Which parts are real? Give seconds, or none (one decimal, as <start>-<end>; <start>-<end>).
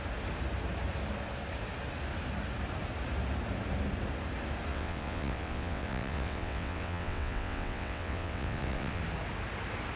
0.0-4.7; 9.0-10.0